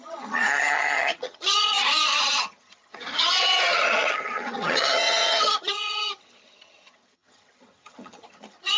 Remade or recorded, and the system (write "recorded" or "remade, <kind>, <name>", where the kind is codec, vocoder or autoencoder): remade, vocoder, HiFi-GAN